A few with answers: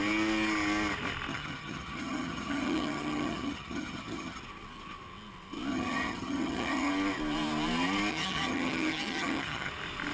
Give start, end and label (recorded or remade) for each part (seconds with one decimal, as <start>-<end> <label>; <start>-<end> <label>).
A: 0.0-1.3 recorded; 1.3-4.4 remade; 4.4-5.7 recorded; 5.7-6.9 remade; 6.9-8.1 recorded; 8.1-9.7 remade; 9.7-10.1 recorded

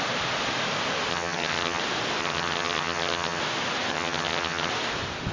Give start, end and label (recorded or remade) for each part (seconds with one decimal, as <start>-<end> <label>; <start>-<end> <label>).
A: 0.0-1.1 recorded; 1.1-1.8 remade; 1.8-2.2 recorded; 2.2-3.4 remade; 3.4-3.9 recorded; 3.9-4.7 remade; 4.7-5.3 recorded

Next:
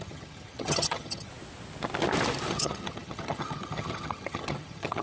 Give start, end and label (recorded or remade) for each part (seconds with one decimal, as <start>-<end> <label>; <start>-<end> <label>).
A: 0.0-1.3 remade; 1.3-2.5 recorded; 2.5-5.0 remade

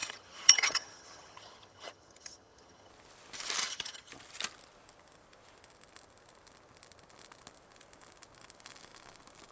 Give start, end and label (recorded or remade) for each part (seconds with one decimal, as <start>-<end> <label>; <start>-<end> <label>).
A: 0.0-2.9 remade; 2.9-3.6 recorded; 3.6-4.1 remade; 4.1-9.5 recorded

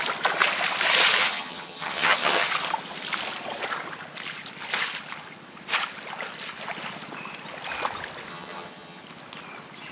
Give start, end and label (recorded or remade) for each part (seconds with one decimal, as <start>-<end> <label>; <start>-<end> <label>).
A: 0.0-1.2 recorded; 1.2-2.5 remade; 2.5-8.3 recorded; 8.3-9.0 remade; 9.0-9.9 recorded

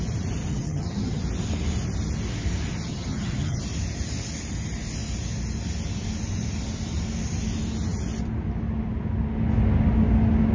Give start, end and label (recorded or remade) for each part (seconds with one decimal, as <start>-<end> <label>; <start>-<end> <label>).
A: 0.0-0.5 recorded; 0.5-1.2 remade; 1.2-2.9 recorded; 2.9-3.6 remade; 3.6-10.5 recorded

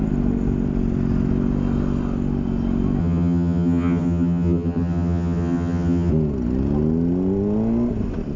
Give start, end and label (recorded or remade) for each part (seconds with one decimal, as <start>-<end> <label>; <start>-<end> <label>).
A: 0.0-3.0 recorded; 3.0-6.1 remade; 6.1-8.4 recorded

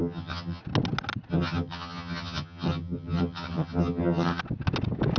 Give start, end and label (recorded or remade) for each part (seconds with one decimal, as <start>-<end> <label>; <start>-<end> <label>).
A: 0.0-0.6 remade; 0.6-1.3 recorded; 1.3-4.4 remade; 4.4-5.2 recorded